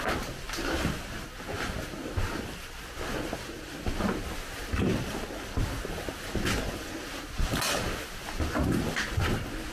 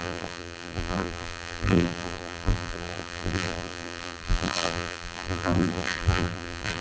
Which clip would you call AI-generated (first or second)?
second